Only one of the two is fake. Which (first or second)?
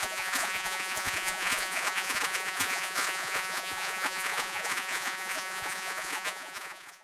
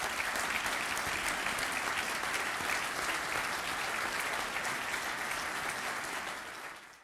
first